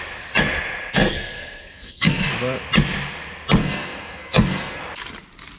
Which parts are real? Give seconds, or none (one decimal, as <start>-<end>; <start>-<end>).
0.0-0.9; 2.3-3.6; 4.8-5.6